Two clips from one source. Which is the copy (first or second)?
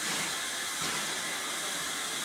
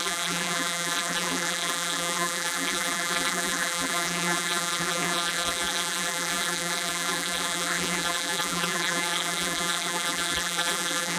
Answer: second